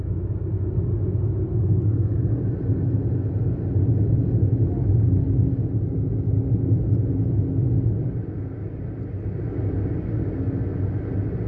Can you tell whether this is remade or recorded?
recorded